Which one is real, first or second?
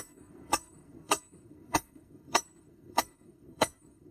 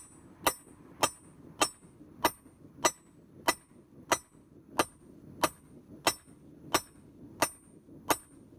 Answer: second